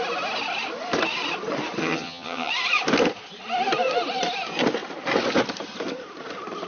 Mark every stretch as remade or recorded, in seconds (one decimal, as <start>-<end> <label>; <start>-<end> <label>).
0.0-1.8 recorded; 1.8-2.5 remade; 2.5-6.7 recorded